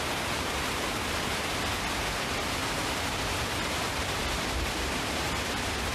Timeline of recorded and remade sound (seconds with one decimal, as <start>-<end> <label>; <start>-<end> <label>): 0.0-2.6 recorded; 2.6-3.3 remade; 3.3-5.9 recorded

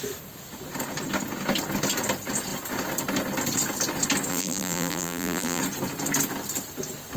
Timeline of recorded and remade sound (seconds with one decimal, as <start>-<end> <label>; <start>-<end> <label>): 0.0-4.3 recorded; 4.3-5.6 remade; 5.6-7.2 recorded

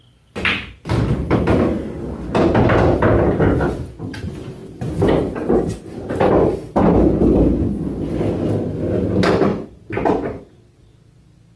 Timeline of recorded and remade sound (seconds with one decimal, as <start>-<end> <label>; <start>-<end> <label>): 0.0-9.5 recorded; 9.5-10.2 remade; 10.2-11.6 recorded

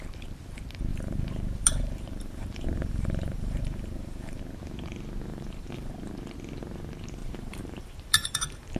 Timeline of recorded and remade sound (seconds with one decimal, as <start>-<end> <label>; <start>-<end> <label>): 0.0-0.9 recorded; 0.9-4.4 remade; 4.4-5.3 recorded; 5.3-5.9 remade; 5.9-7.2 recorded; 7.2-8.8 remade

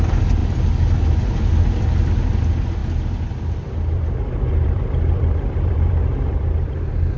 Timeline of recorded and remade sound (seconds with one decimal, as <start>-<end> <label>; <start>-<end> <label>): 0.0-2.8 recorded; 2.8-7.2 remade